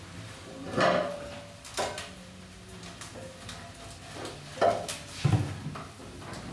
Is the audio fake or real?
real